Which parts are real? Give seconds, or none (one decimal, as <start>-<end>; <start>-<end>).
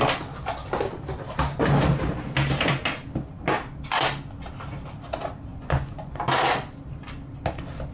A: 0.0-5.5; 6.2-7.9